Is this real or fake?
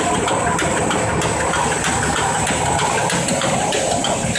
real